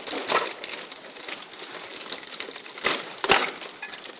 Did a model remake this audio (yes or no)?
no